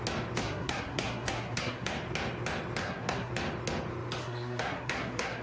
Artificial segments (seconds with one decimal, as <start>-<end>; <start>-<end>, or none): 0.4-1.9; 2.8-3.3; 4.2-5.4